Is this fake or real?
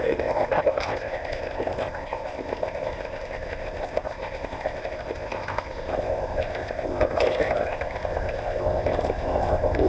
fake